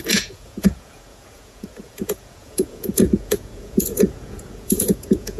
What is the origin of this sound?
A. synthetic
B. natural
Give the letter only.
A